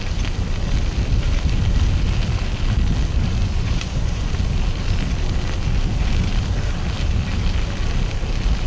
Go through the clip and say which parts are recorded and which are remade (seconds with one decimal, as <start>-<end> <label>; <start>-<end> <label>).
0.0-3.4 recorded; 3.4-4.3 remade; 4.3-8.7 recorded